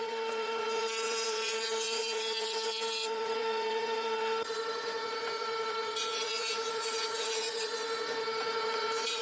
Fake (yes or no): yes